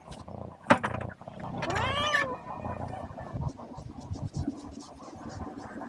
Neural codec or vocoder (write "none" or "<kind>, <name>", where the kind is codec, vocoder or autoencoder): none